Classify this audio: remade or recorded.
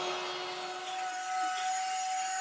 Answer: recorded